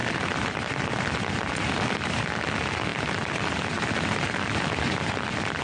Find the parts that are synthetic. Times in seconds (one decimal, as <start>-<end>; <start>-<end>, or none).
none